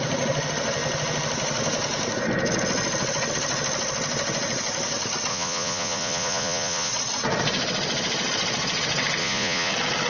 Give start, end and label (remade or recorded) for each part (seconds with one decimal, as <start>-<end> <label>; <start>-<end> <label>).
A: 0.0-5.3 recorded; 5.3-6.9 remade; 6.9-9.2 recorded; 9.2-9.7 remade; 9.7-10.1 recorded